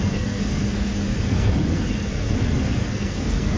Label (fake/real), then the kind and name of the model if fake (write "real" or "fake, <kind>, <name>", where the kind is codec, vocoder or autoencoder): fake, codec, SNAC